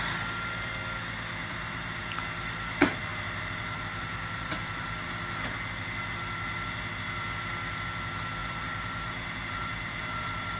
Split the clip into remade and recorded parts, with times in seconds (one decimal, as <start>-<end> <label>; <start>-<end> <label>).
0.0-1.4 recorded; 1.4-2.0 remade; 2.0-3.1 recorded; 3.1-5.2 remade; 5.2-8.4 recorded; 8.4-10.6 remade